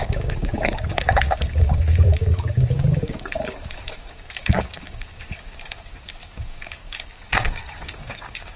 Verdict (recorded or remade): remade